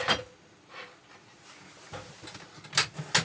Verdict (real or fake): real